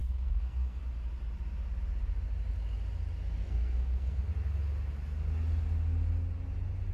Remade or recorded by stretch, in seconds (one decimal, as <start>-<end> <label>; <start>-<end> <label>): 0.0-0.8 remade; 0.8-3.4 recorded; 3.4-4.3 remade; 4.3-6.9 recorded